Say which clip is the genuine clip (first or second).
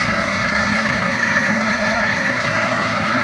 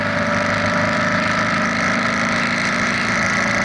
second